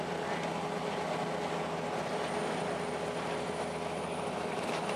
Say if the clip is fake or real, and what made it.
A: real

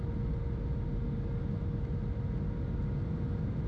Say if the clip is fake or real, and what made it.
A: real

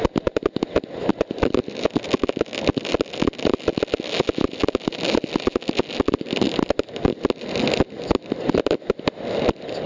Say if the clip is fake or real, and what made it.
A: real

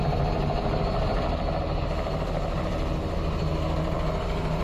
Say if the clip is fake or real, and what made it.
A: real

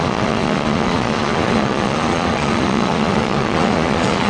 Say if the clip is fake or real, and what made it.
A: fake, vocoder, Vocos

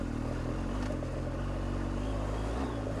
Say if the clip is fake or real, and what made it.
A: real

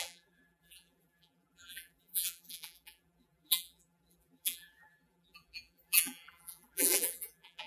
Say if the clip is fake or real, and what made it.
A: fake, vocoder, BigVGAN v2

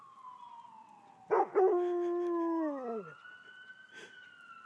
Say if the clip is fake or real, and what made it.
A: real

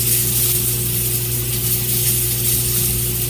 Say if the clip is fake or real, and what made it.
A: real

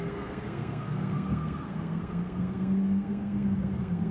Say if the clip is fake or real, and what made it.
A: fake, codec, SNAC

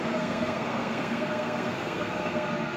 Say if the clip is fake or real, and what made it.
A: fake, codec, SNAC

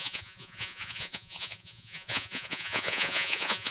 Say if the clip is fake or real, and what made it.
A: fake, vocoder, Vocos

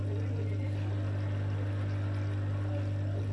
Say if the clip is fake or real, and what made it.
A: real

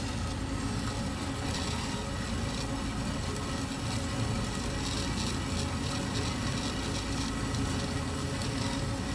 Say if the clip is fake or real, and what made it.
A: real